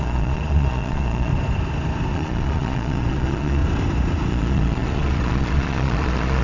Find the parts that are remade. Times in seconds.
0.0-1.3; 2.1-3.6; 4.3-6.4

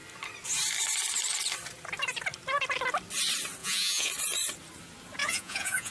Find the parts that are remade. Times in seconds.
3.6-4.1; 5.2-5.9

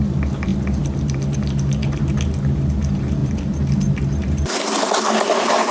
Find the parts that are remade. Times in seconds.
none

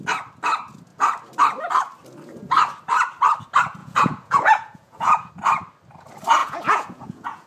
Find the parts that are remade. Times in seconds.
3.8-5.3; 6.4-7.5

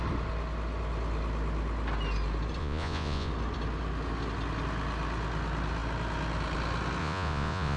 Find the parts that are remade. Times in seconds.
2.6-3.3; 7.0-7.8

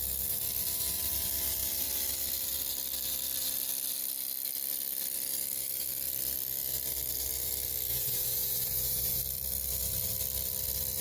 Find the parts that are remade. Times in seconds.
7.9-9.2

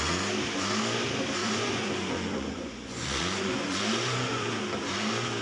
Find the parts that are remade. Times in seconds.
1.4-4.6